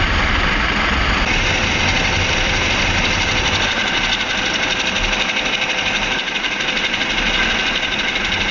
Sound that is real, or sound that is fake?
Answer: real